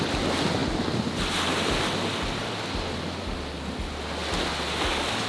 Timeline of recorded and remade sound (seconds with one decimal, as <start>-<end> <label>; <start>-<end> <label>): 0.0-5.3 recorded